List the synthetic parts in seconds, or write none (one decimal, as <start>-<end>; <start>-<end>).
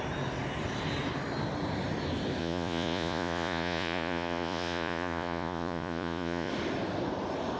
2.4-6.5